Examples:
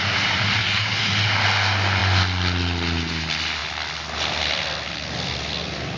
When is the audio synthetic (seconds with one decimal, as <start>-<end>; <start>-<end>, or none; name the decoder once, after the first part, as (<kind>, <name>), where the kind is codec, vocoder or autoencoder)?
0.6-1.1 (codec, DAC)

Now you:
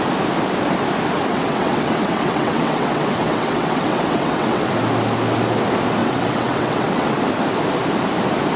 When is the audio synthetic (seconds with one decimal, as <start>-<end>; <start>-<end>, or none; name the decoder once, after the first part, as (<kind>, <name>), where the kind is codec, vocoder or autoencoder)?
1.3-4.7 (vocoder, WaveNeXt); 6.0-7.2

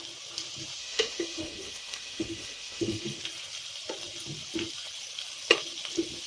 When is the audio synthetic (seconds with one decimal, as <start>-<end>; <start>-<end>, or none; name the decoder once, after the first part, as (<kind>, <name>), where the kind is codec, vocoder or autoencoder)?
0.8-3.2 (autoencoder, DAC-VAE)